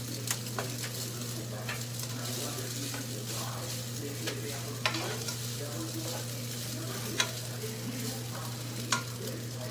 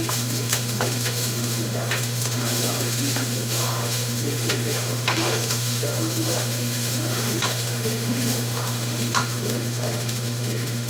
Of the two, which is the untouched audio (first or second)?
first